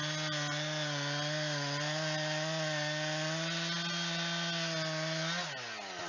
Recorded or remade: recorded